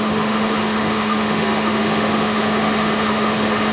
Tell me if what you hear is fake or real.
fake